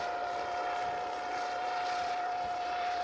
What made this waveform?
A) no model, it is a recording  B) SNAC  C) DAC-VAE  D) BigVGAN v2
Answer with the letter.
A